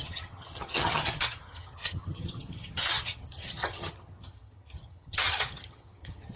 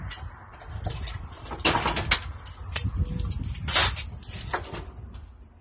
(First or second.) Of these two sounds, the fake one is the first